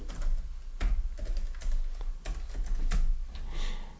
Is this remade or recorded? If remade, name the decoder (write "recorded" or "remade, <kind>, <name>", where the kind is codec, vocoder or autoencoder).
recorded